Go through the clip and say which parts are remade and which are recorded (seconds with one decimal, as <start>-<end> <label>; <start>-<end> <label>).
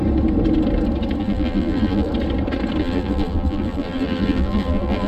0.0-1.2 recorded; 1.2-2.1 remade; 2.1-2.8 recorded; 2.8-5.1 remade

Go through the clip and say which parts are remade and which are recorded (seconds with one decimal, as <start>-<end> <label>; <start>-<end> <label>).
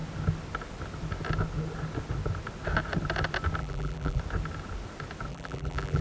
0.0-3.6 recorded; 3.6-4.2 remade; 4.2-5.3 recorded; 5.3-6.0 remade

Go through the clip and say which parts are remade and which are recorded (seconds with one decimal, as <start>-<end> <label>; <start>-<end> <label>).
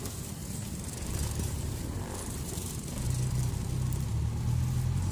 0.0-0.4 recorded; 0.4-3.5 remade; 3.5-5.1 recorded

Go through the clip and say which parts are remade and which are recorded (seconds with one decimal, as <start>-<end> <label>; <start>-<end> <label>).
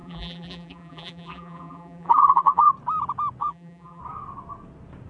0.0-2.7 remade; 2.7-3.4 recorded; 3.4-4.0 remade; 4.0-5.1 recorded